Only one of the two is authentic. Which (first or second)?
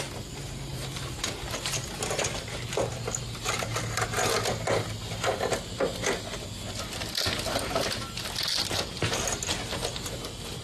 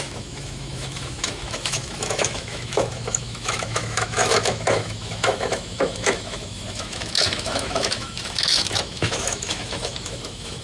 first